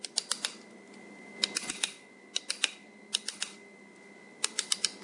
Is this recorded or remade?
recorded